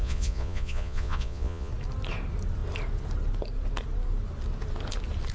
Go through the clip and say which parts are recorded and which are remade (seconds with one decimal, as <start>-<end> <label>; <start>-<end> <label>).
0.0-1.7 remade; 1.7-5.3 recorded